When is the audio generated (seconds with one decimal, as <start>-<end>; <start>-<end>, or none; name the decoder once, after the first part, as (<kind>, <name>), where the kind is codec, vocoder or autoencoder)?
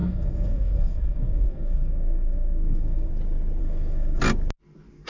0.0-3.1 (codec, SNAC); 3.6-4.2